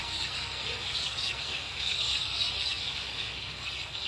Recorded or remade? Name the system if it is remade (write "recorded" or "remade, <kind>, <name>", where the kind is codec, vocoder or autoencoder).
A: remade, codec, SNAC